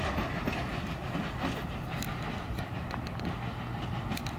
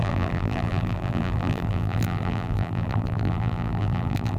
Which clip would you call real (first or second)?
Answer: first